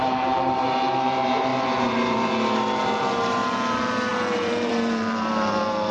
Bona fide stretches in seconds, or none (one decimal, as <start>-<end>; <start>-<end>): none